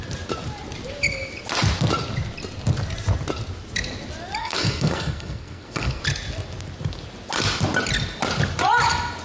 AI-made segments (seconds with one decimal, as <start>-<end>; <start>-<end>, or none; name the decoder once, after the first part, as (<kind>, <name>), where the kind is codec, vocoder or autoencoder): 4.4-6.0 (codec, SNAC)